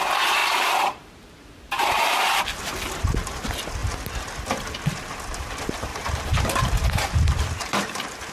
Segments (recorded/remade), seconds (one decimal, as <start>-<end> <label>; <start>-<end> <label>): 0.0-0.4 recorded; 0.4-2.4 remade; 2.4-5.9 recorded; 5.9-8.3 remade